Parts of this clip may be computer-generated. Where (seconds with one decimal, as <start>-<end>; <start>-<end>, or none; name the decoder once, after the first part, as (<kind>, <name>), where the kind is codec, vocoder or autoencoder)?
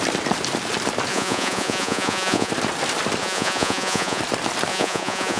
1.1-2.5 (vocoder, Vocos); 3.2-4.2; 4.7-5.4